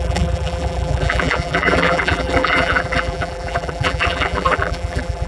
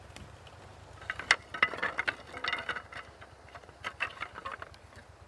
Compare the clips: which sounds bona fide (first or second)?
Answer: second